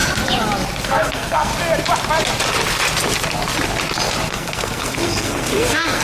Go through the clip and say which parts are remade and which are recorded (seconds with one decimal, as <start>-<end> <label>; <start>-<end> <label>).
0.0-0.8 recorded; 0.8-1.5 remade; 1.5-4.3 recorded; 4.3-6.0 remade